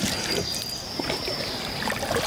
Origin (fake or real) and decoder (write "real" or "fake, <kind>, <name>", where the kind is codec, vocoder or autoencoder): real